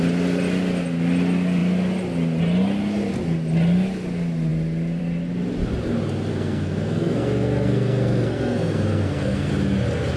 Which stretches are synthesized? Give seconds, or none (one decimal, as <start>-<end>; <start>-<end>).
6.3-9.5